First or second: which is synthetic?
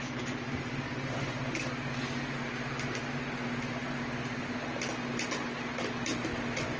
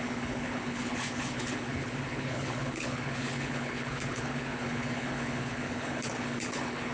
second